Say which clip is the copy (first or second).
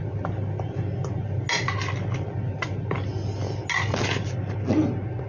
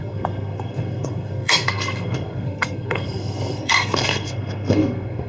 second